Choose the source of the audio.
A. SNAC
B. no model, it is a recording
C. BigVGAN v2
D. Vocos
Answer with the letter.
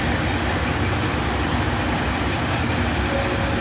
B